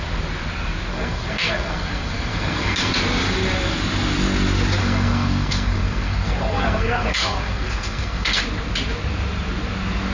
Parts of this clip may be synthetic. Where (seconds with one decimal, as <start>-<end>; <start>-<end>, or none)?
0.9-2.9; 4.8-8.4